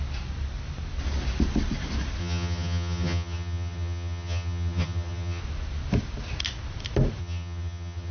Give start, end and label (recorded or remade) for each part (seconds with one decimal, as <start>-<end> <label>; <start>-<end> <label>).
0.0-2.2 recorded; 2.2-5.4 remade; 5.4-7.2 recorded; 7.2-8.1 remade